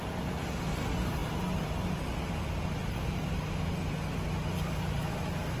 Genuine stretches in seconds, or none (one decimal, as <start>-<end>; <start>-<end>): 0.0-5.6